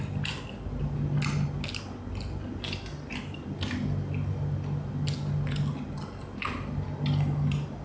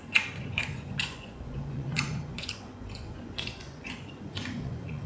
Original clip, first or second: first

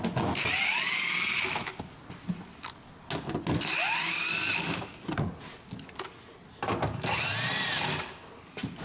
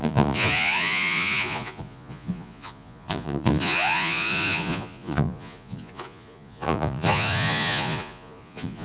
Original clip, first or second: first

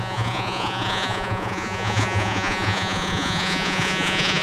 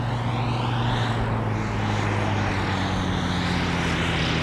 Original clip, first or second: second